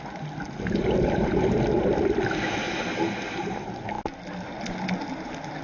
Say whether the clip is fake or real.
real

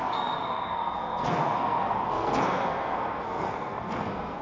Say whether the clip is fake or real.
fake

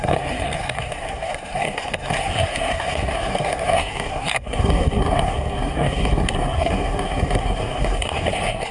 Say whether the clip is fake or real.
fake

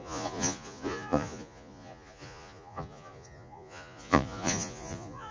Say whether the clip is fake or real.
fake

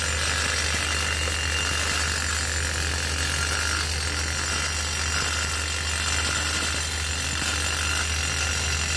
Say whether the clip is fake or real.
real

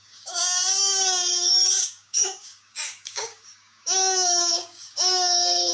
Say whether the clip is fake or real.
fake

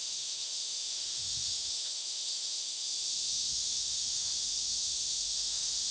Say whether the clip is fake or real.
fake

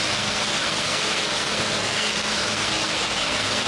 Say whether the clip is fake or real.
fake